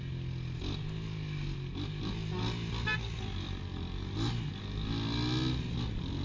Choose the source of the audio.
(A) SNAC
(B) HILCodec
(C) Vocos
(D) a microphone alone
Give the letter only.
D